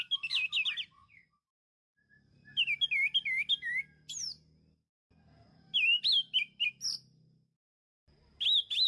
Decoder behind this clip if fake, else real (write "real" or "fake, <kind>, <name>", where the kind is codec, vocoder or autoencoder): real